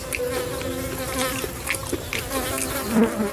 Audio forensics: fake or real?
real